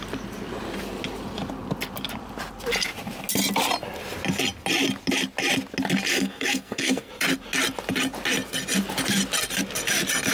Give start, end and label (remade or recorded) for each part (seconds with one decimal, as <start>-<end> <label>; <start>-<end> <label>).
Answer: 0.0-6.1 recorded; 6.1-7.1 remade; 7.1-10.3 recorded